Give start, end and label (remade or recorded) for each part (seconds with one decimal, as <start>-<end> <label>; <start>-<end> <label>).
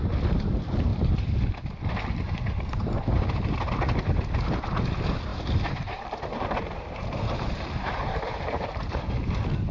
0.0-5.3 recorded; 5.3-9.1 remade; 9.1-9.7 recorded